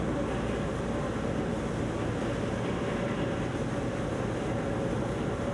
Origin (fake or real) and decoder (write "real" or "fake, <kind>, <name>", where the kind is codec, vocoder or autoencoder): real